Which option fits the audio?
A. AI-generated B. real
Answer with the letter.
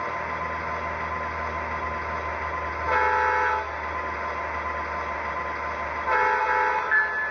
B